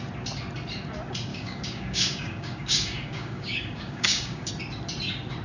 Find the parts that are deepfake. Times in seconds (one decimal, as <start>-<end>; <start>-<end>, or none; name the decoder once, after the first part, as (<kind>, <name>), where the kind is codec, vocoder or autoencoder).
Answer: 1.3-4.5 (codec, DAC)